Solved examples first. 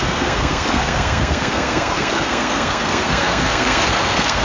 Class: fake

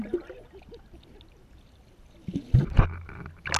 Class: real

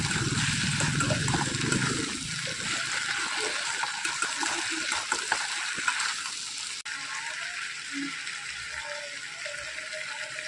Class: real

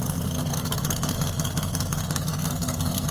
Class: fake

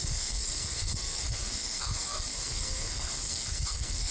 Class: fake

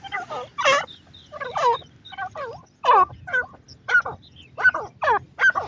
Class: real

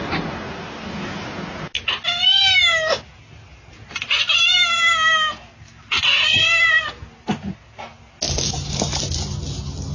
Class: real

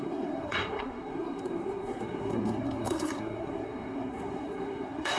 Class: fake